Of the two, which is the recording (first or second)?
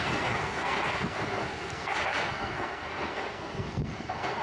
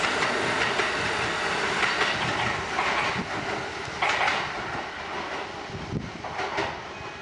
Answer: second